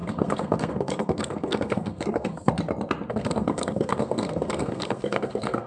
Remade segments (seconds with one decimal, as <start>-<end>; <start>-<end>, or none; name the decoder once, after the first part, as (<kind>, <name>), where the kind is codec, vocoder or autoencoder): 0.0-2.5 (codec, SNAC); 3.1-5.7